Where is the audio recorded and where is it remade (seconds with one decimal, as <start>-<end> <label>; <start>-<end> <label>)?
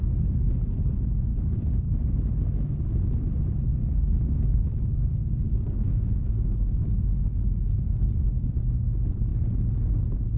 0.0-1.3 recorded; 1.3-1.8 remade; 1.8-3.8 recorded; 3.8-8.1 remade; 8.1-10.4 recorded